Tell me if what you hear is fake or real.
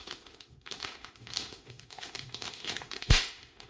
fake